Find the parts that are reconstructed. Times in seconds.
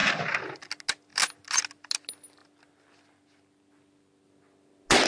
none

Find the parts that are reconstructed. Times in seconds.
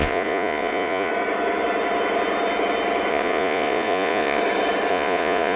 0.0-1.1; 3.1-4.4; 4.9-5.6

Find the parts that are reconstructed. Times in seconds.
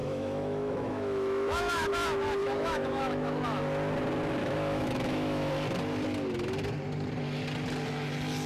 0.0-1.9; 2.4-3.6; 4.4-5.5